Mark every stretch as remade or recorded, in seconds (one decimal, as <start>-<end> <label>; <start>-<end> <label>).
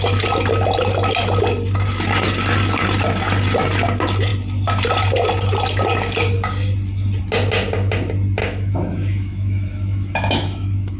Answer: 0.0-8.4 recorded; 8.4-11.0 remade